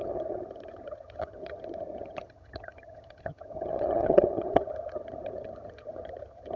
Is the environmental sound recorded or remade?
remade